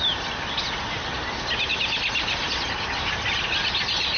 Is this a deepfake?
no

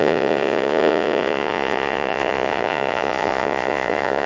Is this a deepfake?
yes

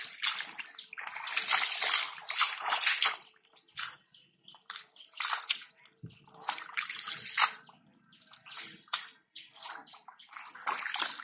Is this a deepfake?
no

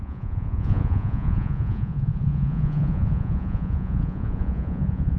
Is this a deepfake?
yes